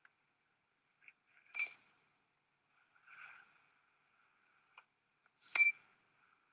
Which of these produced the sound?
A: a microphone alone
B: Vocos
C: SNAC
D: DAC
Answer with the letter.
A